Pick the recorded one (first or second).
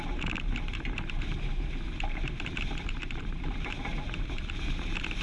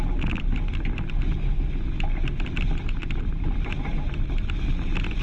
second